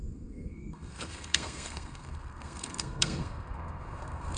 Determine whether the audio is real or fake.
fake